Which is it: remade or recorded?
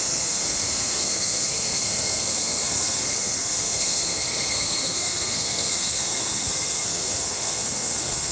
remade